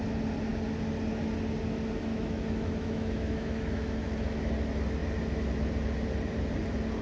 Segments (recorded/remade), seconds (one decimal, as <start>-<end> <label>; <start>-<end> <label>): 0.0-2.1 recorded; 2.1-4.4 remade; 4.4-7.0 recorded